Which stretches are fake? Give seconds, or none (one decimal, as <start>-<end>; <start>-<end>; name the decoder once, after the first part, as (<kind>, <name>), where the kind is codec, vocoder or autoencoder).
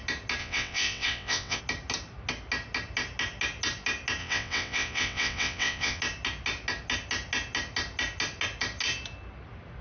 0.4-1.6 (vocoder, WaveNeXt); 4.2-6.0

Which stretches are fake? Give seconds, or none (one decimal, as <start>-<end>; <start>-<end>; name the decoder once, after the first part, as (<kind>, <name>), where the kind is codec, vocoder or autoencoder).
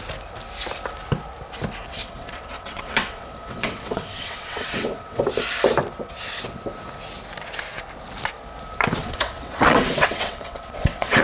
2.0-5.2 (vocoder, WaveNeXt); 9.0-11.2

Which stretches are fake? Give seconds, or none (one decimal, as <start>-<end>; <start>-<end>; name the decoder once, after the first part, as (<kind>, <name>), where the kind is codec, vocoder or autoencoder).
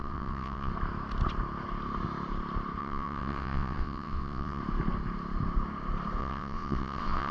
0.0-0.7 (vocoder, WaveNeXt); 2.8-4.6; 6.2-7.3